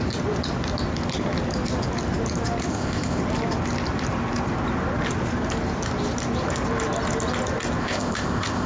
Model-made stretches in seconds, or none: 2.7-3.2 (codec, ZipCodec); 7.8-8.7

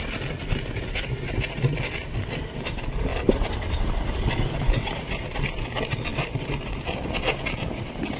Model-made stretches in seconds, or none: 3.1-4.5 (vocoder, BigVGAN v2); 6.1-6.7

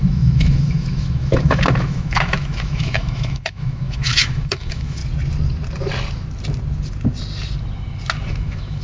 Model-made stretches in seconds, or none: 0.0-5.0 (autoencoder, DAC-VAE); 8.3-8.8

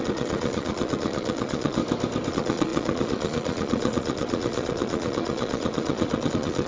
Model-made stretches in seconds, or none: 0.0-1.8 (vocoder, Vocos); 2.3-6.7

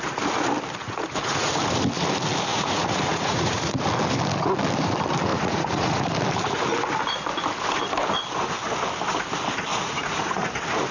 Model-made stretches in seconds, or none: 0.8-1.5 (vocoder, Vocos); 2.5-3.8; 5.3-6.1; 9.7-10.5